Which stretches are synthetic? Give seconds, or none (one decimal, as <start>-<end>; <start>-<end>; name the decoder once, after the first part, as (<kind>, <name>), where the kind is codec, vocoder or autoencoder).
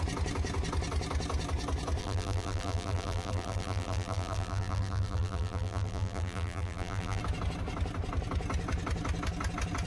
2.0-7.2 (vocoder, BigVGAN v2)